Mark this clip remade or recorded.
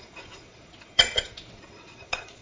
remade